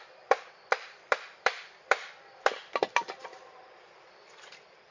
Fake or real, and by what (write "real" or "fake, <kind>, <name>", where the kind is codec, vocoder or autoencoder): fake, vocoder, BigVGAN v2